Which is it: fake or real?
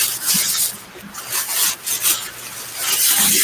real